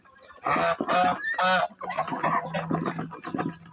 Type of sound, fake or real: real